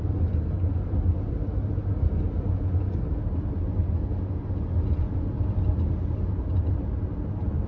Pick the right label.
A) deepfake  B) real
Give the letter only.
B